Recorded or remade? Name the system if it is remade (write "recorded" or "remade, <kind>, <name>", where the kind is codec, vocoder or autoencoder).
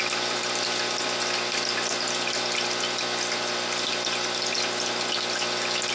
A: recorded